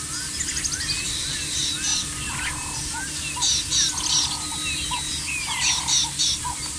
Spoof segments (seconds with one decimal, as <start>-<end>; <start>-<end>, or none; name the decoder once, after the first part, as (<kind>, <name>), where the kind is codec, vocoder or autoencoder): none